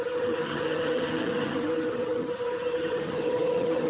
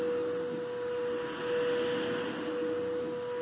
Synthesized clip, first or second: first